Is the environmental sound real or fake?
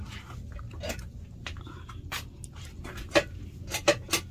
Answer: real